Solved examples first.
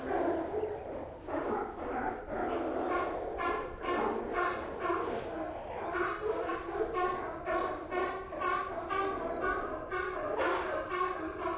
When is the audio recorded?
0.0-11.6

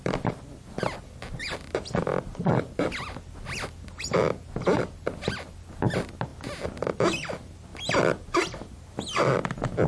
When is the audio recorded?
0.0-9.9

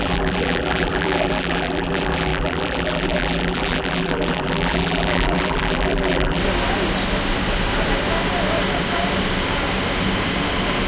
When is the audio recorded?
6.4-10.9

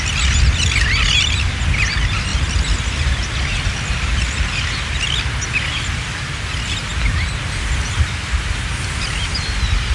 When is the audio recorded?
0.0-9.9